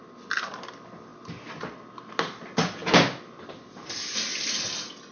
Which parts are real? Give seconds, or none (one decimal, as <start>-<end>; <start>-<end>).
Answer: 0.0-5.1